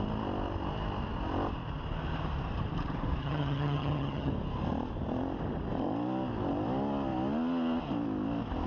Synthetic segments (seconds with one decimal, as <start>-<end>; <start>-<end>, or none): 3.2-4.3